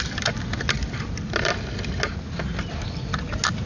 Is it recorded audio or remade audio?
recorded